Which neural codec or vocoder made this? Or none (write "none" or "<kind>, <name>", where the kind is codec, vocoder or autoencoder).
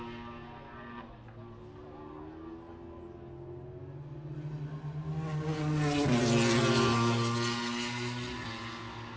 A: none